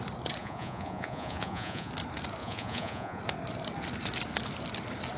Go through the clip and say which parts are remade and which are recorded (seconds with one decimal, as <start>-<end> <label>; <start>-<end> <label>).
0.0-0.4 recorded; 0.4-1.9 remade; 1.9-2.4 recorded; 2.4-3.2 remade; 3.2-5.2 recorded